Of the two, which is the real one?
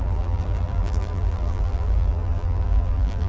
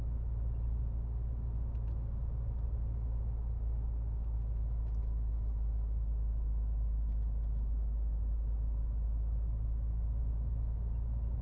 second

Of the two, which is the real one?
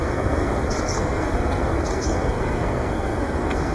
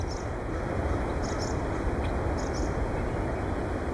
second